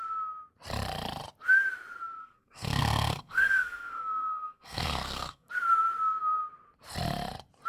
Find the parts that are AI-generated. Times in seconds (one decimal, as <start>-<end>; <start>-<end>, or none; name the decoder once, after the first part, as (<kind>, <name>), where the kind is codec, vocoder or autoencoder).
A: 2.2-5.5 (codec, SNAC)